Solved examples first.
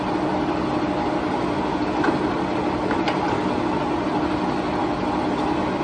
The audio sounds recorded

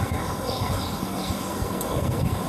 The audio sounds remade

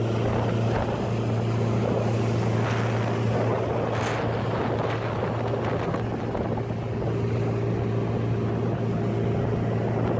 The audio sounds recorded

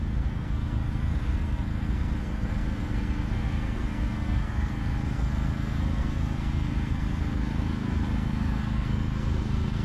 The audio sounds remade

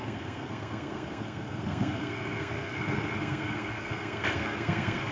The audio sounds remade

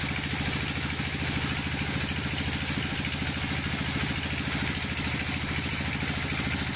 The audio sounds recorded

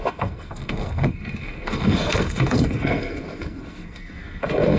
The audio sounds remade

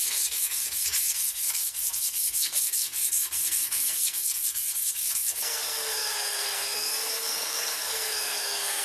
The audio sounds remade